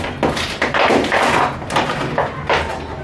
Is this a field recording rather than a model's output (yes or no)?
yes